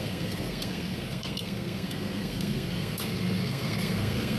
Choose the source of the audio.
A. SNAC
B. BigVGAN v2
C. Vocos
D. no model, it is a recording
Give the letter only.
A